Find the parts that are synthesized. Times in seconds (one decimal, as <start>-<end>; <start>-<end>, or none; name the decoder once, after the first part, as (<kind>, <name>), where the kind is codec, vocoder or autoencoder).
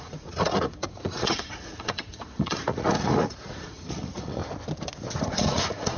0.0-4.4 (vocoder, Vocos); 5.2-6.0